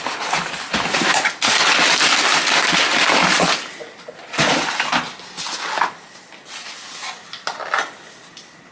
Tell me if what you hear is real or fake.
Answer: real